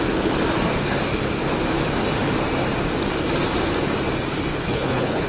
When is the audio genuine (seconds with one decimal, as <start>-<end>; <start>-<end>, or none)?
0.0-4.5

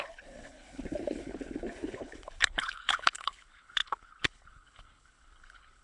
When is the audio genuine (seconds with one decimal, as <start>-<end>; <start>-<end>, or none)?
none

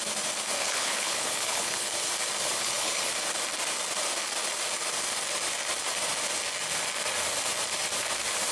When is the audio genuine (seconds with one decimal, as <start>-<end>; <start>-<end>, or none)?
0.0-0.6; 1.9-2.4; 3.1-8.5

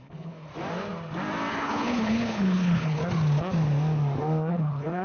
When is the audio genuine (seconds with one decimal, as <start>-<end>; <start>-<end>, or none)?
0.5-1.5; 3.0-4.5

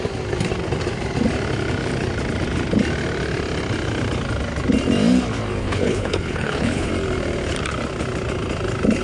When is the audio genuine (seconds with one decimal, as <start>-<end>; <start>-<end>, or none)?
0.0-5.6; 6.9-9.0

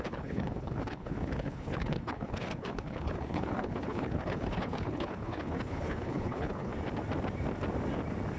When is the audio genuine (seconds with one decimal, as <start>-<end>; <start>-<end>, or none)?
6.7-8.4